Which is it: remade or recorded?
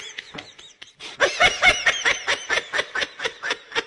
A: remade